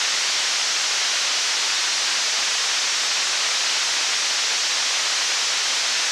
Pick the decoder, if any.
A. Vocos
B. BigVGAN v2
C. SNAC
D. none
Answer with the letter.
D